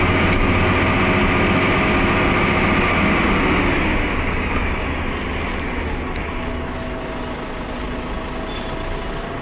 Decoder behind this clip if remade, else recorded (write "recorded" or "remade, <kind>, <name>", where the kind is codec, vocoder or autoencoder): recorded